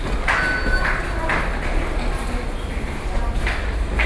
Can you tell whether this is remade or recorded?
recorded